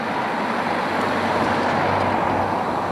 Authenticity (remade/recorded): recorded